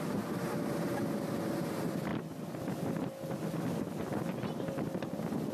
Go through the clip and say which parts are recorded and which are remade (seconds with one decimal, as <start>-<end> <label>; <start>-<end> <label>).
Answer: 0.0-5.5 recorded